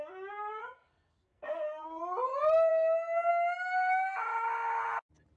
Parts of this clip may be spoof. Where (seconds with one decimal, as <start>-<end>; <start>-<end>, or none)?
0.6-2.0; 2.7-3.3